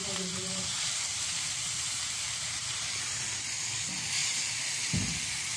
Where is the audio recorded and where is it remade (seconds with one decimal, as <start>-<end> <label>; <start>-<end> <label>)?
0.0-3.4 remade; 3.4-4.2 recorded; 4.2-4.9 remade; 4.9-5.6 recorded